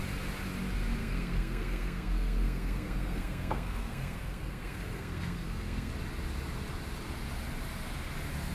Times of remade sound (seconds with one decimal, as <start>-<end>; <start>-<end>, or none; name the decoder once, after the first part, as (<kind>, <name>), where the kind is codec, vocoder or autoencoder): 1.0-5.9 (codec, SNAC)

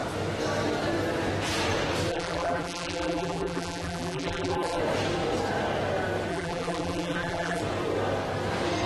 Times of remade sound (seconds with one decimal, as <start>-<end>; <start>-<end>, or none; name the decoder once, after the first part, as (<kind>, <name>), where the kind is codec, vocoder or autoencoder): 2.1-4.8 (vocoder, BigVGAN v2); 6.3-7.6

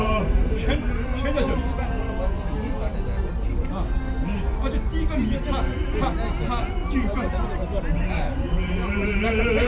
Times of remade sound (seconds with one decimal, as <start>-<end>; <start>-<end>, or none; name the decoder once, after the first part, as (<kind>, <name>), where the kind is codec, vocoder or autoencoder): 0.0-1.1 (vocoder, BigVGAN v2); 1.7-2.9; 6.6-9.7

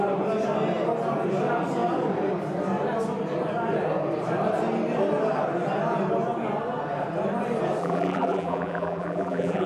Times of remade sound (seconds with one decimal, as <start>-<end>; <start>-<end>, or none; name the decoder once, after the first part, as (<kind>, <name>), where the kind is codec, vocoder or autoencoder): 7.8-9.7 (vocoder, BigVGAN v2)

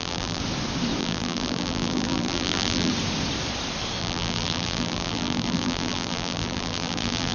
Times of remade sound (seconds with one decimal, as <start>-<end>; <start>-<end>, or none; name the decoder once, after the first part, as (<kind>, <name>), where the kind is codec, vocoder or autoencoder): 0.0-0.4 (vocoder, BigVGAN v2); 1.0-2.9; 4.0-7.3

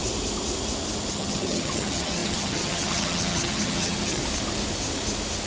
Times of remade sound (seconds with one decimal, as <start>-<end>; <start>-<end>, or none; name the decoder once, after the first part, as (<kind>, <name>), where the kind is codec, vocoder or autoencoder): 1.1-4.2 (vocoder, HiFi-GAN)